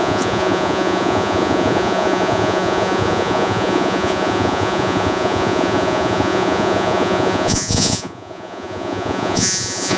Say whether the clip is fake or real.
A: fake